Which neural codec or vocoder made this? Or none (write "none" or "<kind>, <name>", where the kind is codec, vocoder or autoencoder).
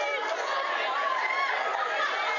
none